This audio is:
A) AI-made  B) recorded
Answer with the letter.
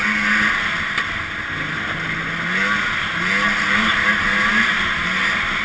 B